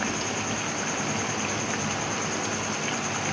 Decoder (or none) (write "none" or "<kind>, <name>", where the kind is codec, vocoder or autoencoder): none